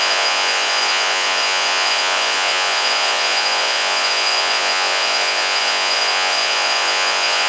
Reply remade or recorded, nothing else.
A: remade